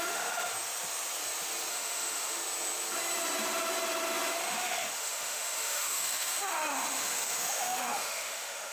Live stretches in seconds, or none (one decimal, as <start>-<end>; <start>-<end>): 0.5-1.7; 2.4-4.5